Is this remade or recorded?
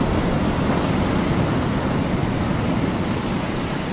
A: recorded